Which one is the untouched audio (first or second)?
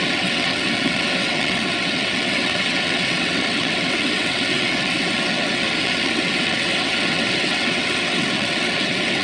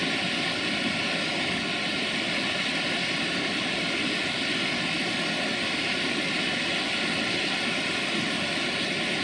second